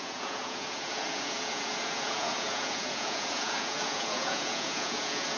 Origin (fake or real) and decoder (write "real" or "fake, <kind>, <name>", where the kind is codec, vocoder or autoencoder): fake, vocoder, Vocos